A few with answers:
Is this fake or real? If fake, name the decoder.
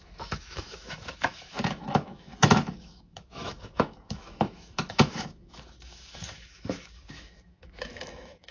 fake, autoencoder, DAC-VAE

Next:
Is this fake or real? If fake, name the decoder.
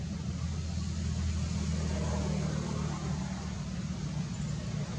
real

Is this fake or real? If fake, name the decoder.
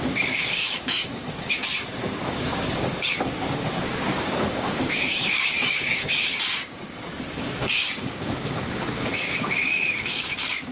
fake, codec, DAC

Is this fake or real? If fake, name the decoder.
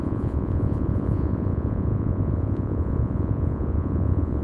fake, vocoder, Vocos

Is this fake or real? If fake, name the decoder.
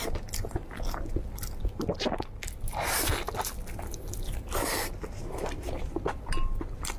real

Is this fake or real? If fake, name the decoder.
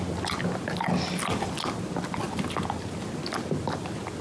real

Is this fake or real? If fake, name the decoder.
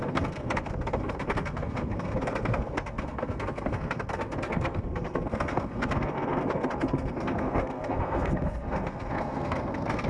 fake, codec, SNAC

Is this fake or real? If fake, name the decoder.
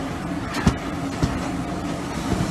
real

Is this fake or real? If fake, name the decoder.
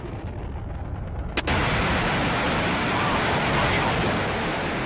real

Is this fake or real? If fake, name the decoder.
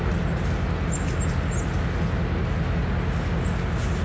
real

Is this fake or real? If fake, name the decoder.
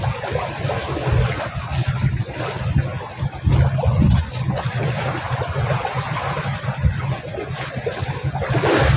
real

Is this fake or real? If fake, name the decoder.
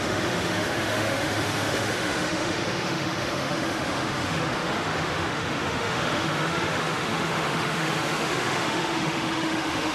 fake, autoencoder, DAC-VAE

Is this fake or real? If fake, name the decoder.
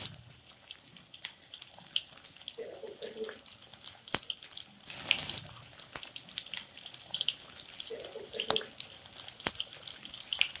real